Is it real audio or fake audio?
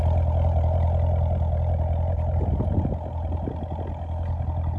real